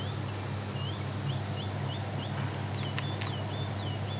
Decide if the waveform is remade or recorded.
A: recorded